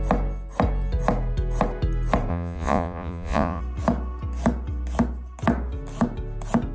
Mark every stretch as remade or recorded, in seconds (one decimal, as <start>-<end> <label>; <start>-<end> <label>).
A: 0.0-2.3 recorded; 2.3-3.6 remade; 3.6-6.7 recorded